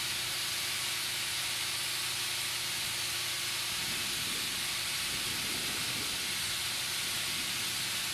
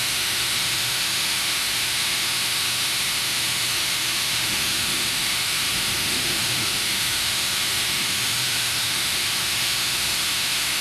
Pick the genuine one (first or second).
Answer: first